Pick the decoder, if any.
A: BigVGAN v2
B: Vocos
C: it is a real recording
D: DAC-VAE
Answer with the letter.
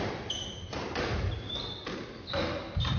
C